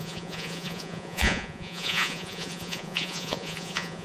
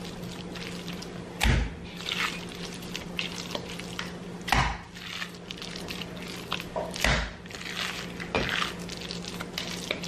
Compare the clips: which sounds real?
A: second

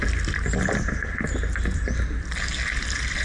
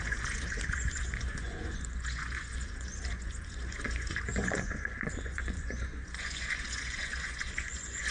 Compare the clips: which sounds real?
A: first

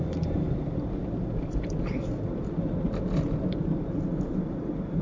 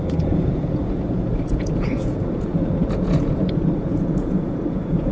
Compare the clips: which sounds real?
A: first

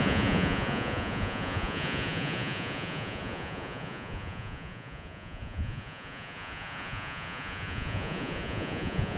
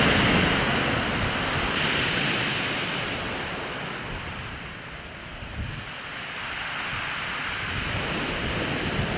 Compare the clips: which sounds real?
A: second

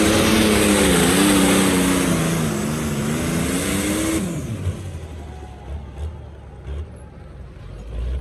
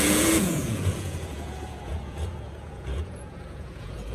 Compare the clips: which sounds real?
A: first